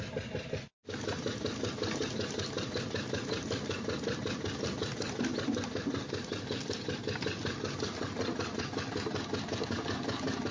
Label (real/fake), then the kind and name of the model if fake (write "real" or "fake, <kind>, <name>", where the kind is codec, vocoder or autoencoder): real